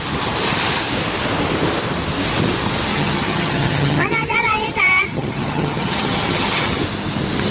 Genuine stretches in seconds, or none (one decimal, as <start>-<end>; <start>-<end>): 0.0-2.9; 6.8-7.5

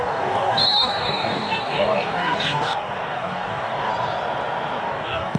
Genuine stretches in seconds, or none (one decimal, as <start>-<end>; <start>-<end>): 3.9-4.8

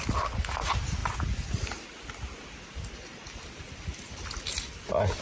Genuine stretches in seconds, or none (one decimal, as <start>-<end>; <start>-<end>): 0.0-5.2

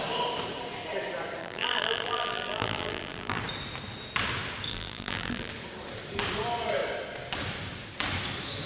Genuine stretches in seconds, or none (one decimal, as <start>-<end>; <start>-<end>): 0.0-1.4; 3.4-4.7; 5.5-8.7